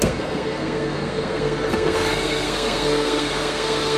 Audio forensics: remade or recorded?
remade